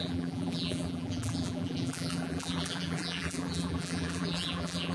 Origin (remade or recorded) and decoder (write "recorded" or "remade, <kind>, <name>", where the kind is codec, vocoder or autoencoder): remade, vocoder, BigVGAN v2